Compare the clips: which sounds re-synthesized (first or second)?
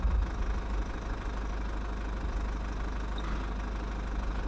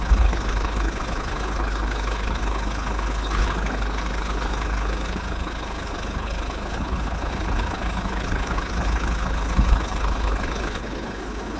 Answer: second